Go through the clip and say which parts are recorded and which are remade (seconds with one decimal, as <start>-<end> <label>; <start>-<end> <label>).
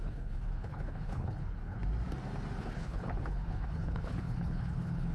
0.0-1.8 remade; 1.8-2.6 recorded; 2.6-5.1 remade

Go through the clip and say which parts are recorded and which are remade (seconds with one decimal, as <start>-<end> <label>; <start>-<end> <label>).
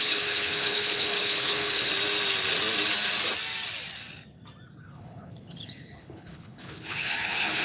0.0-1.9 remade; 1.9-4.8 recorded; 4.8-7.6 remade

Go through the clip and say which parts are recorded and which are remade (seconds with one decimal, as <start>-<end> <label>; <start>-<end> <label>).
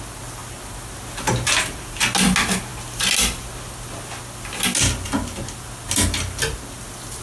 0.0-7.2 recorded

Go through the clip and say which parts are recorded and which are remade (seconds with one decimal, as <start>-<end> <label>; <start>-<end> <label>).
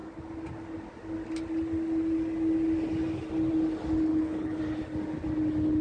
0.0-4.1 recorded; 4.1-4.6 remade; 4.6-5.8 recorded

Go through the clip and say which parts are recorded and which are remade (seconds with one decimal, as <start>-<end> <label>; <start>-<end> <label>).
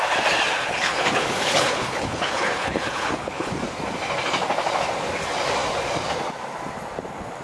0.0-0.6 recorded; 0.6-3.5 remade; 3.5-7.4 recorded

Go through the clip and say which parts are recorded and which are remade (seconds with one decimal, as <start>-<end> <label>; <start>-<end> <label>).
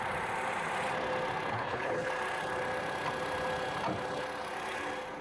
0.0-1.5 recorded; 1.5-2.1 remade; 2.1-5.2 recorded